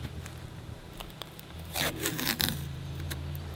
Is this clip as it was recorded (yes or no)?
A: no